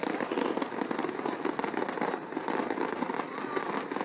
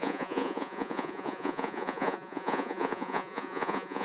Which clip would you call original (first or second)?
first